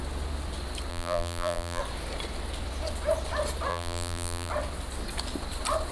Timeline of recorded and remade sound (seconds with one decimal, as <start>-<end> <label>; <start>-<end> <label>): 0.0-0.9 recorded; 0.9-1.8 remade; 1.8-3.7 recorded; 3.7-4.5 remade; 4.5-5.9 recorded